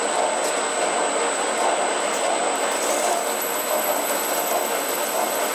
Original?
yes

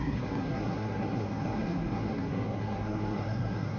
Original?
no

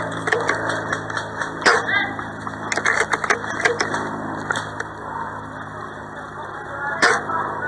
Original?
yes